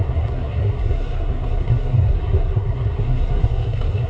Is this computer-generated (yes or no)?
yes